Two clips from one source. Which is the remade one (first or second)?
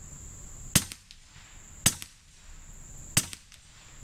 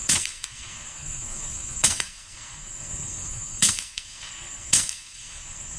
second